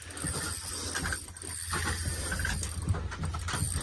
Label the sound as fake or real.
real